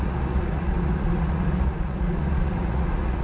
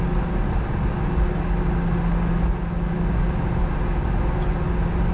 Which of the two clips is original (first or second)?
second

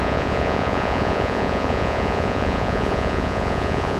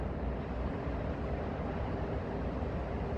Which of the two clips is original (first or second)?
second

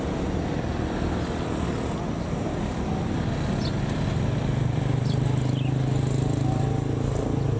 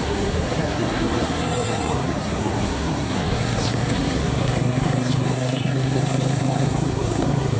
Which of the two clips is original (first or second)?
first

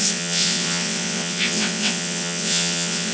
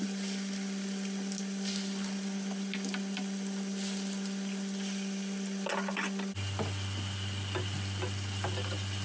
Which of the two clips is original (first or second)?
second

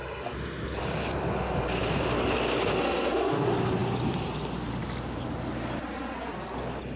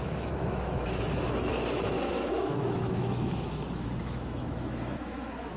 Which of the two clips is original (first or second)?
first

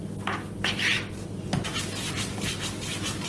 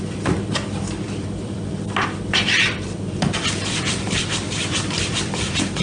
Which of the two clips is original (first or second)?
first